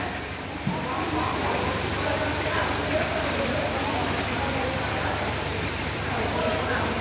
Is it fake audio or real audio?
fake